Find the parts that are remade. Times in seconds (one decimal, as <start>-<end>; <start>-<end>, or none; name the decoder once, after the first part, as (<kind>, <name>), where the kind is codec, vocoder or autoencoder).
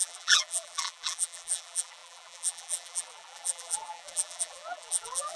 0.0-5.4 (vocoder, BigVGAN v2)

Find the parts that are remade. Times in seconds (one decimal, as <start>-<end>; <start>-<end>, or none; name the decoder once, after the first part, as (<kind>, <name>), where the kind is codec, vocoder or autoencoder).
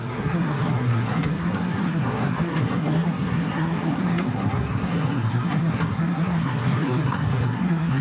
0.0-8.0 (codec, SNAC)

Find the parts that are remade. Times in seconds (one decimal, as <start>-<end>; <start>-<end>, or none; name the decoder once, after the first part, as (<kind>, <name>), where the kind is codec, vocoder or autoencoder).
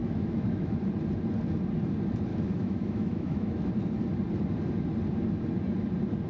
0.0-0.8 (autoencoder, DAC-VAE); 2.3-3.7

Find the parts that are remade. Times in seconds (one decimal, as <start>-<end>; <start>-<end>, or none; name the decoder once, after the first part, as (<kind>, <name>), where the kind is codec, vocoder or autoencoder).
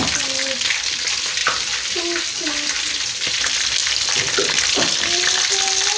none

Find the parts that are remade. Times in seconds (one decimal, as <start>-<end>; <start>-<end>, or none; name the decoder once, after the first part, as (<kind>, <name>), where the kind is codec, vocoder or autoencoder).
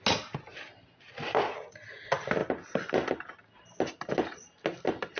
none